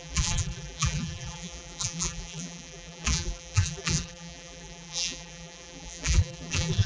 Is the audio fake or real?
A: fake